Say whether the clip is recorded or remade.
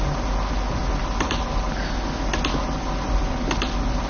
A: recorded